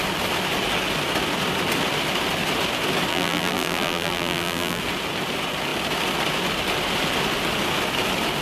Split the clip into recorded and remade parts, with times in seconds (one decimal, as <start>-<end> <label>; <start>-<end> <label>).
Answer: 0.0-3.1 recorded; 3.1-4.8 remade; 4.8-8.4 recorded